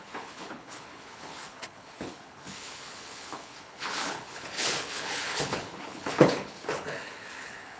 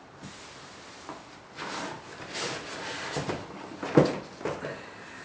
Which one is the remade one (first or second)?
first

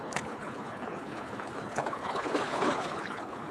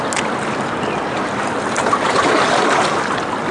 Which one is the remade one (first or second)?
first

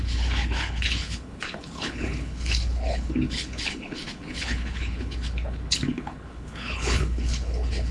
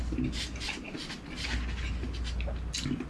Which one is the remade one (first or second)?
first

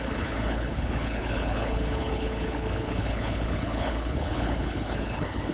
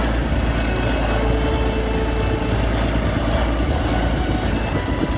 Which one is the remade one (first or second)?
first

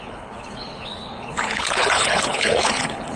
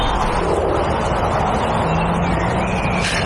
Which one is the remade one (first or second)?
first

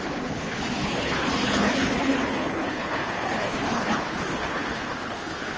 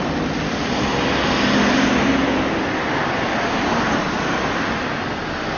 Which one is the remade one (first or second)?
first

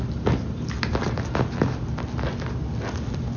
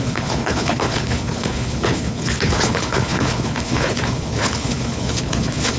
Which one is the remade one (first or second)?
second